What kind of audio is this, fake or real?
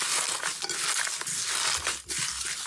real